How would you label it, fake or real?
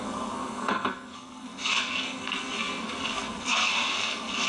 fake